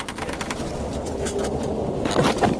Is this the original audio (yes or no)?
yes